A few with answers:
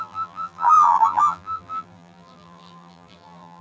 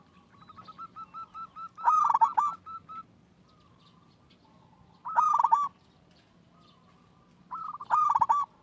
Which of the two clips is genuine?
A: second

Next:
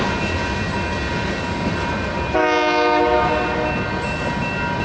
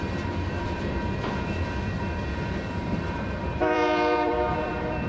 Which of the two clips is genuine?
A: first